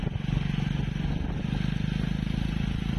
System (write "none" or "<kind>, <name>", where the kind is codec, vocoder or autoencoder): none